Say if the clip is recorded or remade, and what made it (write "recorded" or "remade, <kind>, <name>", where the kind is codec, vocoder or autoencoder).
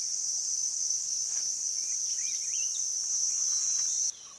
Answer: recorded